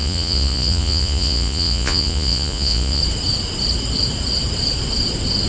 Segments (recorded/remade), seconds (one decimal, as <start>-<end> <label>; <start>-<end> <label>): 0.0-3.0 remade; 3.0-5.5 recorded